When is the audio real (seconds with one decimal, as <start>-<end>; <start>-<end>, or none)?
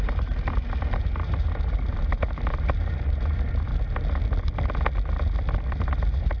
3.7-5.7